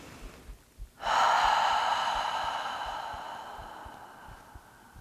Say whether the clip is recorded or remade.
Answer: recorded